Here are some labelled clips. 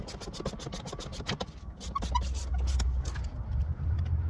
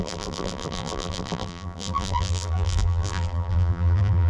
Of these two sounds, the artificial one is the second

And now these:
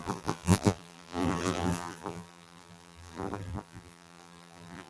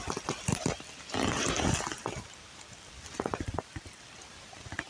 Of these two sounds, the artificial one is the first